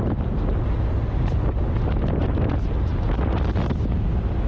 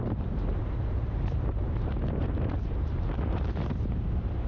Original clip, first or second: first